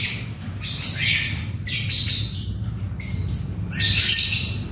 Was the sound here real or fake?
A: real